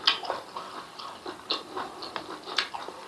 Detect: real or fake real